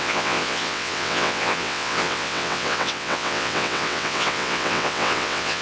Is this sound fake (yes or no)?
yes